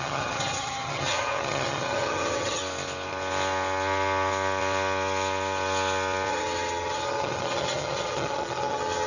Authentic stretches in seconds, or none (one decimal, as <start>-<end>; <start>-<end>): 2.6-6.3